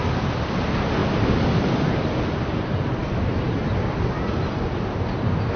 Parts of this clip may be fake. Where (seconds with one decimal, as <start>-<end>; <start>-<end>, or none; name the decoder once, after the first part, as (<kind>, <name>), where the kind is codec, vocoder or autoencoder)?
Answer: none